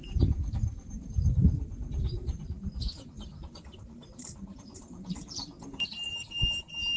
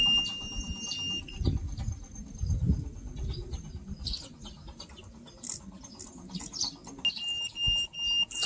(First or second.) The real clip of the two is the second